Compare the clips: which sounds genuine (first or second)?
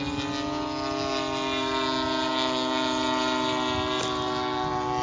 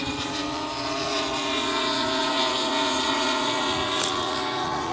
first